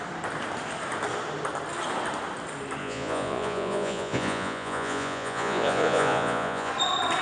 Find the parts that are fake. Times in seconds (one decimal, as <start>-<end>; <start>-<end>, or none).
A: 2.8-6.7